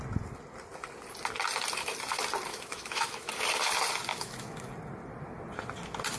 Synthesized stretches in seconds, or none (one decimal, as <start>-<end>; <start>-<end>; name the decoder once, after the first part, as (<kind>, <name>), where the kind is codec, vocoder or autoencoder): 2.5-3.3 (autoencoder, DAC-VAE); 4.1-4.7